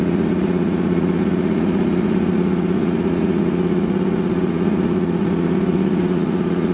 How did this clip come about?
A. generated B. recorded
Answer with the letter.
A